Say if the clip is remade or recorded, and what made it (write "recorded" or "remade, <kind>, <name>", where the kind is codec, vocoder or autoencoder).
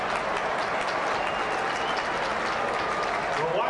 recorded